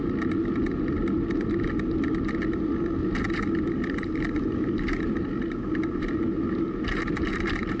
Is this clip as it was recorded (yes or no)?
yes